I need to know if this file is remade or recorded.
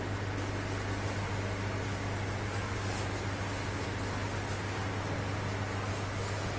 recorded